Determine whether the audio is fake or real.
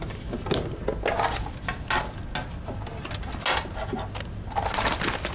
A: real